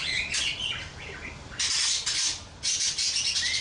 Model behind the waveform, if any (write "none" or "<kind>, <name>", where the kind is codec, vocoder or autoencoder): none